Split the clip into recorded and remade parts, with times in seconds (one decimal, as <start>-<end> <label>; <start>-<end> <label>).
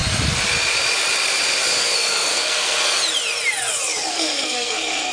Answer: 0.0-1.8 recorded; 1.8-3.0 remade; 3.0-4.1 recorded; 4.1-5.1 remade